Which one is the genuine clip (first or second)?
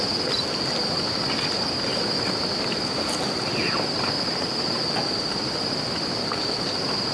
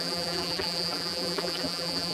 first